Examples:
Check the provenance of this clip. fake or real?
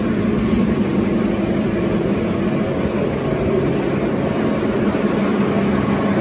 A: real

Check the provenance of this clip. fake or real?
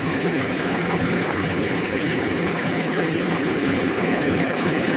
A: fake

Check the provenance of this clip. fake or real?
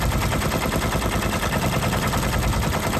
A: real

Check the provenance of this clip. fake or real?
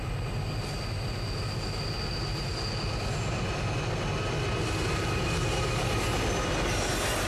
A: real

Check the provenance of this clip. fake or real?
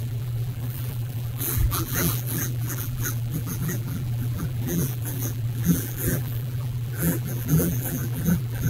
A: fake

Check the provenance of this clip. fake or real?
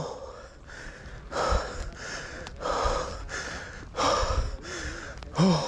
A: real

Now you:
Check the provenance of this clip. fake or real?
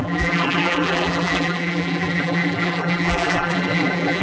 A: fake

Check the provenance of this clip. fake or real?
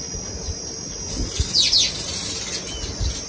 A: real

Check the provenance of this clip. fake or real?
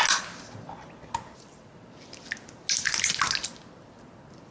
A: real